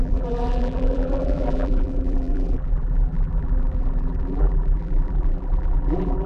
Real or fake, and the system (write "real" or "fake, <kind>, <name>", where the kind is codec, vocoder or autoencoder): fake, vocoder, BigVGAN v2